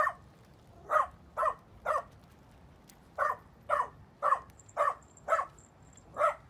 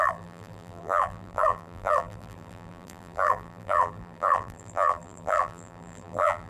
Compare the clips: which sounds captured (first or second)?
first